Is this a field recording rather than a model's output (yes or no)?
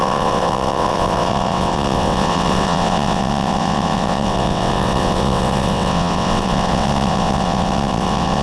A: no